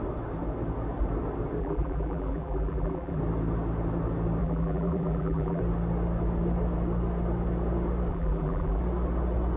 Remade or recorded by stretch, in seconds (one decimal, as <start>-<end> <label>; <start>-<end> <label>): 0.0-1.6 recorded; 1.6-3.2 remade; 3.2-4.4 recorded; 4.4-5.6 remade; 5.6-8.1 recorded; 8.1-8.8 remade; 8.8-9.6 recorded